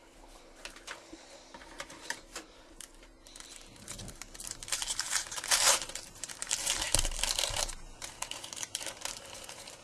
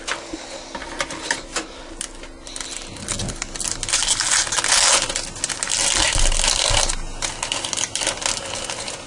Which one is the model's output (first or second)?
first